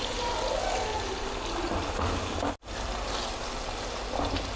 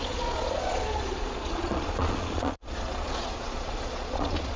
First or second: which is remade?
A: second